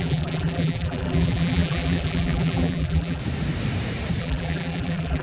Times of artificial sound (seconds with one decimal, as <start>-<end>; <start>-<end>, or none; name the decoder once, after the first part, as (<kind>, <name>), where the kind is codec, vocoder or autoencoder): 0.0-3.2 (vocoder, BigVGAN v2); 4.2-5.2